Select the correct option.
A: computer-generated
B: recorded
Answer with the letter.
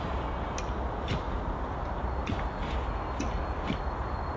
B